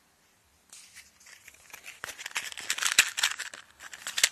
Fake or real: real